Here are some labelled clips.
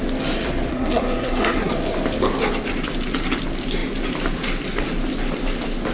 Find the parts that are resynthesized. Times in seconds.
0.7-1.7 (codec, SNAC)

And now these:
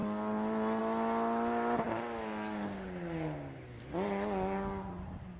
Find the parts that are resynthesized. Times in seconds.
none